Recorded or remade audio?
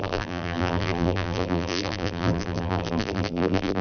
remade